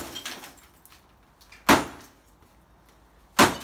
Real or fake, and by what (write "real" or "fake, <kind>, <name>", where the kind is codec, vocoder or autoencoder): real